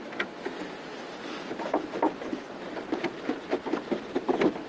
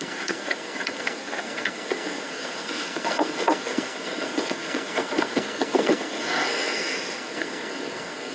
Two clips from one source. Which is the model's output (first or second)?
second